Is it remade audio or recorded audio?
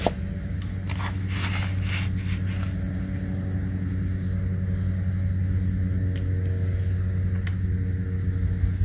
recorded